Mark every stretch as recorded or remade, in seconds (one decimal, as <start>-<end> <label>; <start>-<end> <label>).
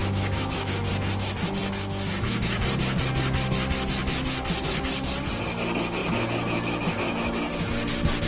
0.0-0.9 remade; 0.9-1.6 recorded; 1.6-2.6 remade; 2.6-6.0 recorded; 6.0-7.5 remade; 7.5-8.3 recorded